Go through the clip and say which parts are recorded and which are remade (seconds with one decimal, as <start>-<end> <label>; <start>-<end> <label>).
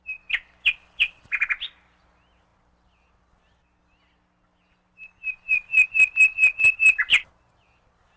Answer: 0.0-8.2 recorded